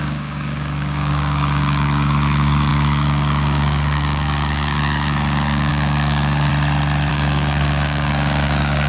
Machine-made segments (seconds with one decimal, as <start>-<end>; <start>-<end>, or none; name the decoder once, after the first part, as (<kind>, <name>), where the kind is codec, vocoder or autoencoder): 0.0-6.5 (codec, DAC); 7.1-8.9